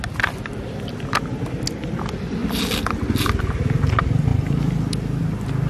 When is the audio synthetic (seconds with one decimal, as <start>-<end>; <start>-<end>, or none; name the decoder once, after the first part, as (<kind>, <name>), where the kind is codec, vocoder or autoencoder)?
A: none